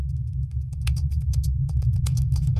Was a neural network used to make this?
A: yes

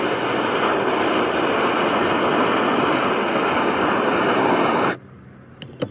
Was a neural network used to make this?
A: no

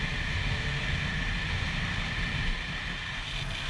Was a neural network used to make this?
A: no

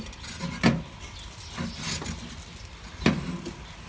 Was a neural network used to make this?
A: no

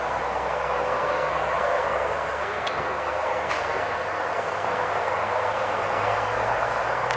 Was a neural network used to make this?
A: yes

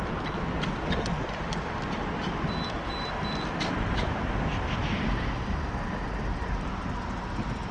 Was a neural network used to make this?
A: no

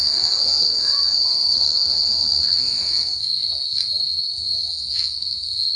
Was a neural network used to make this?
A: yes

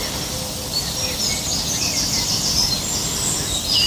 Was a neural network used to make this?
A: no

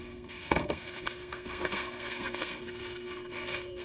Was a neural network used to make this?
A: yes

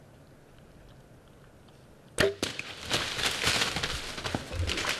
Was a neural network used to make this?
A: no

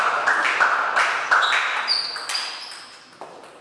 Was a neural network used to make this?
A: no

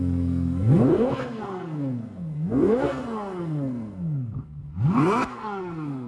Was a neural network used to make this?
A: yes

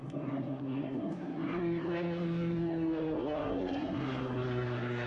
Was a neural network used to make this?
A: yes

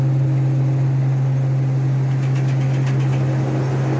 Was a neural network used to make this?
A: no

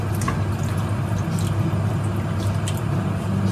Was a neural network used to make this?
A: no